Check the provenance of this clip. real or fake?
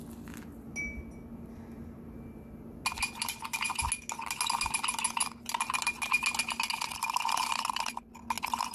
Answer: real